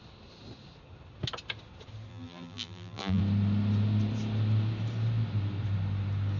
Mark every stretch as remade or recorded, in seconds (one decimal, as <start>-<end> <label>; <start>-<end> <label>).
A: 0.0-2.1 recorded; 2.1-3.2 remade; 3.2-6.4 recorded